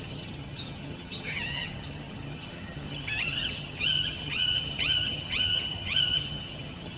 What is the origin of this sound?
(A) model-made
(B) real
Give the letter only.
A